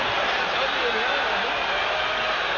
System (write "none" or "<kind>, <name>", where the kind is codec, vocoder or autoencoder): none